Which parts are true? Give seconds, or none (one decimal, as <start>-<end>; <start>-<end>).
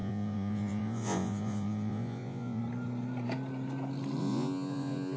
2.6-4.2